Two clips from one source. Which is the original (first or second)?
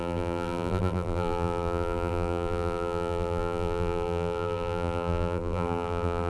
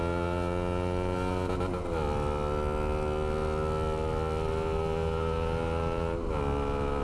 second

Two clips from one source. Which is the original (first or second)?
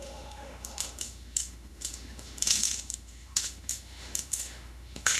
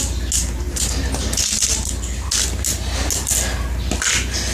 second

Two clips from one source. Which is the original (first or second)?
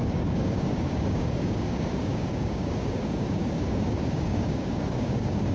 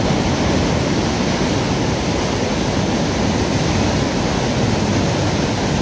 second